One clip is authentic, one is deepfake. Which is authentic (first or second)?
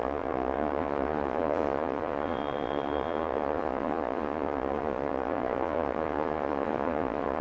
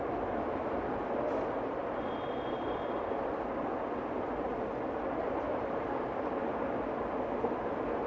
second